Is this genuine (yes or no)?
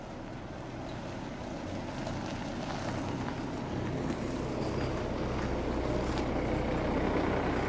yes